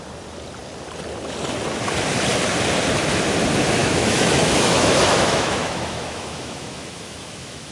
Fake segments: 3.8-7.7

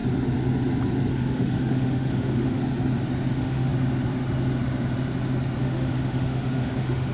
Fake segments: 1.1-2.6; 3.3-3.7; 5.6-7.1

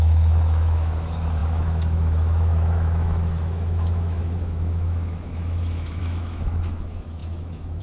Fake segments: 0.0-7.8

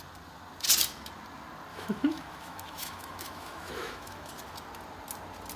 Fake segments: 1.7-4.3

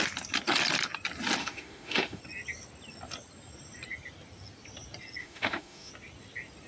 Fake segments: 1.4-2.2; 5.2-5.9

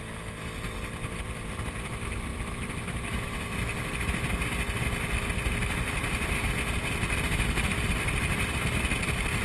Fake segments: none

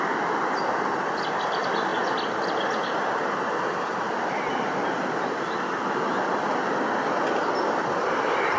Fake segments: none